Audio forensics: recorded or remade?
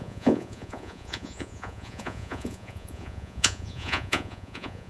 remade